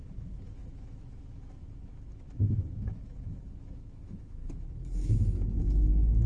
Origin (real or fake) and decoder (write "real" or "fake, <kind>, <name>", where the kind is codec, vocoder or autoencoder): fake, autoencoder, DAC-VAE